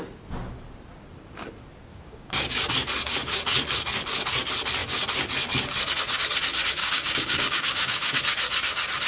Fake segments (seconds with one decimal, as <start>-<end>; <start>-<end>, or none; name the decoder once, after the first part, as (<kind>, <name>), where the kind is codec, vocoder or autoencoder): 1.9-2.7 (codec, DAC); 6.8-8.2